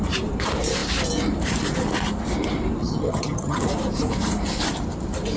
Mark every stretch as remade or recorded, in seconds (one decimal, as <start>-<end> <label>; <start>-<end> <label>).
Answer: 0.0-2.8 recorded; 2.8-3.7 remade; 3.7-5.4 recorded